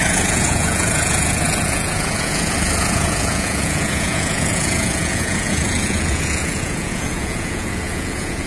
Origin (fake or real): fake